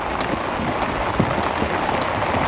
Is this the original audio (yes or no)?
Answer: yes